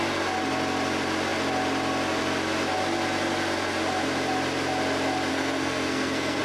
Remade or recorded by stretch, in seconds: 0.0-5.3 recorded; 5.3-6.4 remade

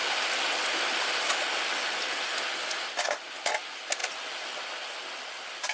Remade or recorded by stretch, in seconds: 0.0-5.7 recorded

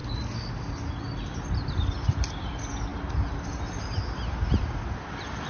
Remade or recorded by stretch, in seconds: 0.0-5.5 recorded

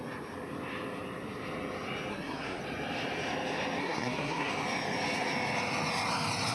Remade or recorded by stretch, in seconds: 0.0-2.1 recorded; 2.1-2.6 remade; 2.6-3.8 recorded; 3.8-4.5 remade; 4.5-6.5 recorded

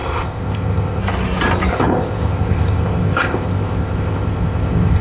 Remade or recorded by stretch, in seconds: 0.0-1.0 remade; 1.0-1.7 recorded; 1.7-5.0 remade

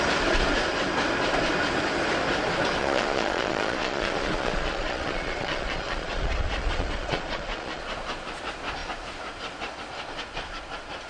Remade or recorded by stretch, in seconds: 0.0-2.8 recorded; 2.8-7.8 remade; 7.8-11.1 recorded